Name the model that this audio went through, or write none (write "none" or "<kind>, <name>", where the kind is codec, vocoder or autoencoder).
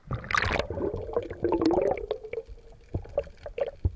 none